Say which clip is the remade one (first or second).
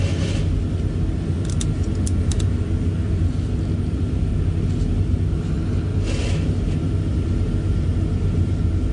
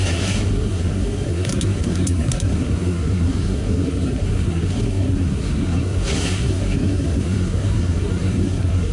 second